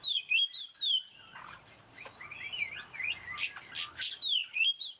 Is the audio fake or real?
real